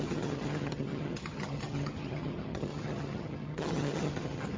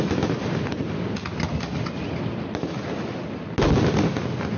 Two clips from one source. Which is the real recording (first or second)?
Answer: second